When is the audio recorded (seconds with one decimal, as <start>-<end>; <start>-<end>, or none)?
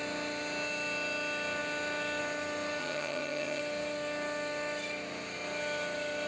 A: 0.0-2.8; 3.6-6.3